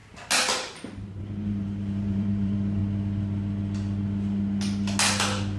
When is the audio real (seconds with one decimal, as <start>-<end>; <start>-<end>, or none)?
0.0-1.2; 2.8-5.6